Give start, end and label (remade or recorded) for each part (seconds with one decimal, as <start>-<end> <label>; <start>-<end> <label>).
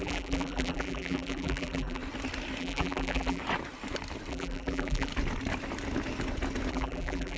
0.0-2.0 remade; 2.0-2.6 recorded; 2.6-3.4 remade; 3.4-4.3 recorded; 4.3-5.1 remade; 5.1-6.7 recorded; 6.7-7.4 remade